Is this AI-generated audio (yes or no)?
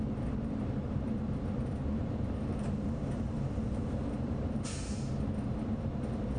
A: yes